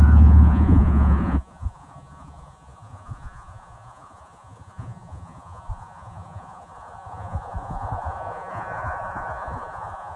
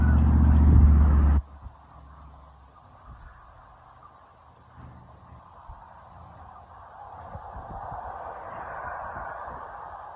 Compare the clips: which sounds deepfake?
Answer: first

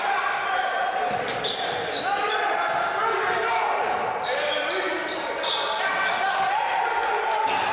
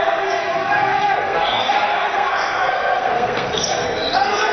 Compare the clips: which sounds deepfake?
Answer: second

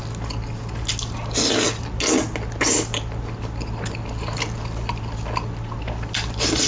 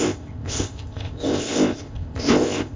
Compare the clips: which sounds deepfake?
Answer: second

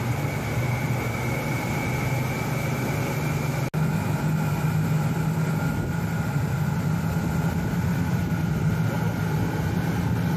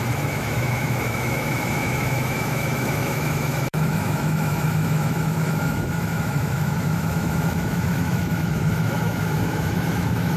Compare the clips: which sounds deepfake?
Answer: second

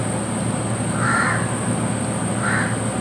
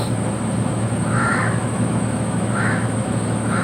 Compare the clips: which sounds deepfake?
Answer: second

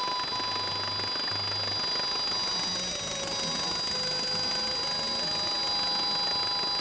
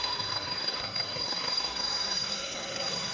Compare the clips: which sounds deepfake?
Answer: second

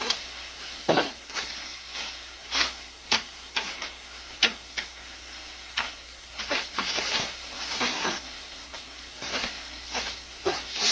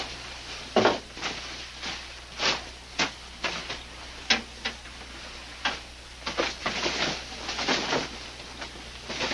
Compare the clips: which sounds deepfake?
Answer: first